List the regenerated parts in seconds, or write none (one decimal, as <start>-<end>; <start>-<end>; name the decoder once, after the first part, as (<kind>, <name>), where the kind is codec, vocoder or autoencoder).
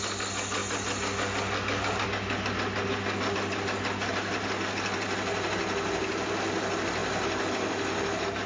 none